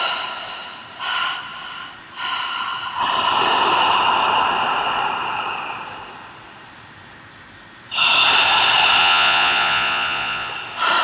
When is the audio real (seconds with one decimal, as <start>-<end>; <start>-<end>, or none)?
0.0-9.0; 10.5-11.0